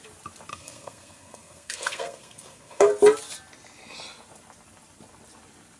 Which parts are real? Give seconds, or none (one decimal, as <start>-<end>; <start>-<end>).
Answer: 0.0-0.5; 2.9-5.8